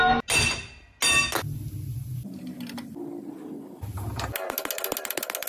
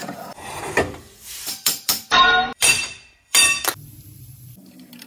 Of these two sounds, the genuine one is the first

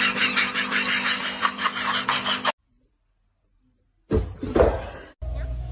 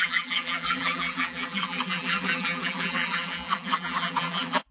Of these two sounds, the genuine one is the first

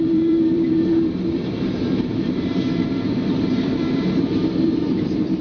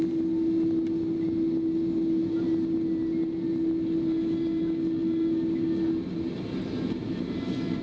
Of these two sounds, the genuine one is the second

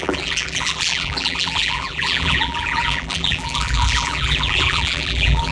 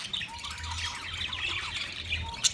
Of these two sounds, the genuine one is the second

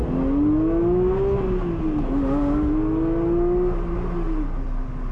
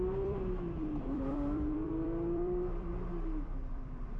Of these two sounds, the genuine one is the first